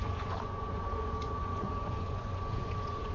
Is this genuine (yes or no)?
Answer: no